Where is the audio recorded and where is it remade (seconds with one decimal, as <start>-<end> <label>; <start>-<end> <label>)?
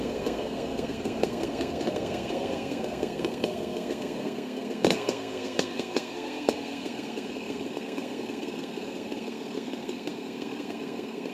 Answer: 0.0-11.3 remade